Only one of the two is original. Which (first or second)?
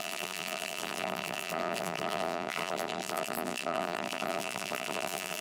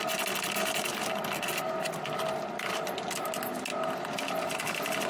second